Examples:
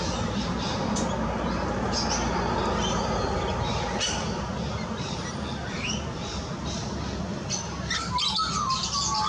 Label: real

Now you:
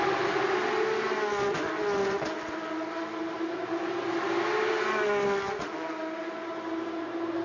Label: real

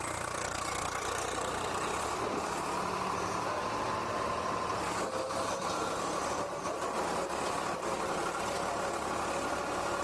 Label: real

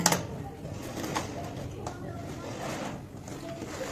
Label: real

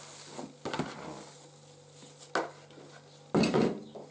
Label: real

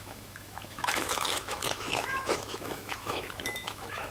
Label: fake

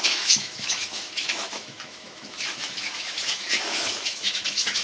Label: fake